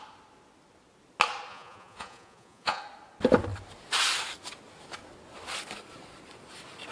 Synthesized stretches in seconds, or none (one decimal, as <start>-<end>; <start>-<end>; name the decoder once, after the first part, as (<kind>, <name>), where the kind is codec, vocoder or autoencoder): 1.5-2.8 (vocoder, Vocos)